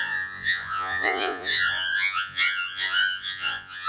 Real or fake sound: fake